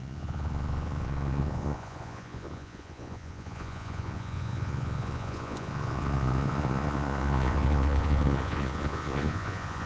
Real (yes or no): no